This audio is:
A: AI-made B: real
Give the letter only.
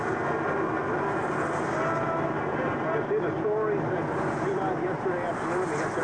B